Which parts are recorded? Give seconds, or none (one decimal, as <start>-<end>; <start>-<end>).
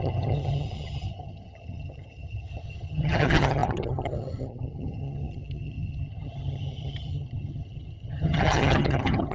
none